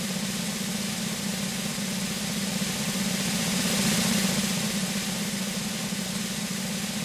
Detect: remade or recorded remade